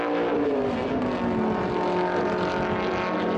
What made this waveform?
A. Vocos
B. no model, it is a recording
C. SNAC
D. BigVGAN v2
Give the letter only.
B